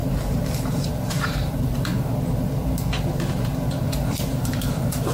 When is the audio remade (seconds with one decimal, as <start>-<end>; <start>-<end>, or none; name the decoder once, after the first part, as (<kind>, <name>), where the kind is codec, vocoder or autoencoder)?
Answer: 0.0-1.9 (vocoder, BigVGAN v2); 4.1-5.1